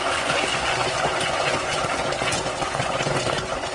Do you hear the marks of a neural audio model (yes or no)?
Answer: yes